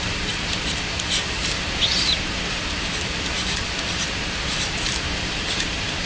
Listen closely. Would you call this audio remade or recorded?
remade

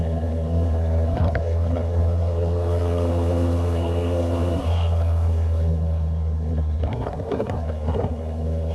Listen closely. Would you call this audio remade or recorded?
remade